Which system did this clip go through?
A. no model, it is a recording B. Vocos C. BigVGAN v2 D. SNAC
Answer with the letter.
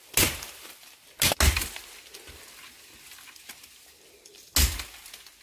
A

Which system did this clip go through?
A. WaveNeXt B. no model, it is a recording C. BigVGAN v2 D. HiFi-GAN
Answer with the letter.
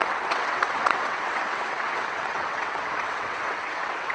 A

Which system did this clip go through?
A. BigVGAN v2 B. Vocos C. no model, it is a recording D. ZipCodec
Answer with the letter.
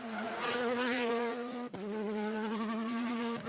B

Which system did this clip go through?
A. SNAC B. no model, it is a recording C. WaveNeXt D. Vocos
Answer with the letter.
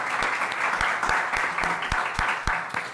B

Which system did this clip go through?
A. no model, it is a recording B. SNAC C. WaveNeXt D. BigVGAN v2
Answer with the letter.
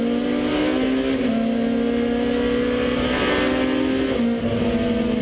A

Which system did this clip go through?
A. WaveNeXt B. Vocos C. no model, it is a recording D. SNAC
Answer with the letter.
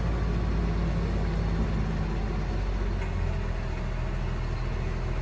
C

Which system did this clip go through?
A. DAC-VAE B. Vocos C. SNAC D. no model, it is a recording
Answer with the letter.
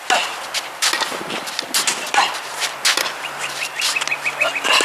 D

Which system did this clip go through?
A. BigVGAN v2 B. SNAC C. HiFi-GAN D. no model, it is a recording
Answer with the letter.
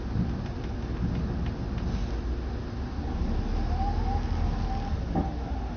D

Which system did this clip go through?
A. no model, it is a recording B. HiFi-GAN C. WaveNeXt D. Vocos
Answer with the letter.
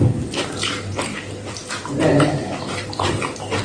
A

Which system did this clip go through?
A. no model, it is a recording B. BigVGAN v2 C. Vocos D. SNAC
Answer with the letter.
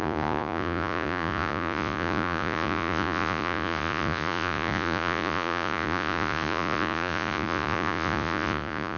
C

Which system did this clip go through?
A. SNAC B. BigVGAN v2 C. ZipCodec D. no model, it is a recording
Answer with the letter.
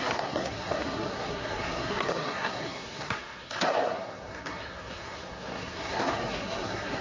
A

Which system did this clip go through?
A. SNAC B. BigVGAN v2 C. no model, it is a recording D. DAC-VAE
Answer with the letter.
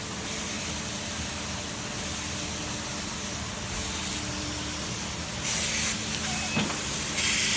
C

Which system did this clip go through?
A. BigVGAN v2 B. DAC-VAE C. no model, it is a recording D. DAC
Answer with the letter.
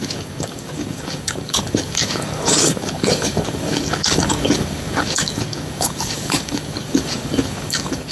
D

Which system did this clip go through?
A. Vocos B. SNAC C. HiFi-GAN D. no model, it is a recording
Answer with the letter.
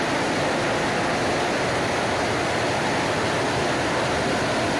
D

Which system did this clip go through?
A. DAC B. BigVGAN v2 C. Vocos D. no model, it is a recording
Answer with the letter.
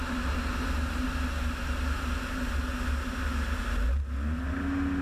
D